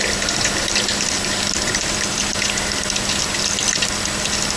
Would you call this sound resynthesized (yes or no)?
no